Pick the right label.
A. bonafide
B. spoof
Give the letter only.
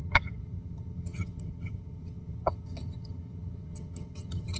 B